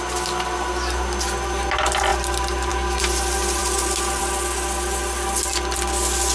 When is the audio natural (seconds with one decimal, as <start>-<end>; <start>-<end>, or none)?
0.0-6.3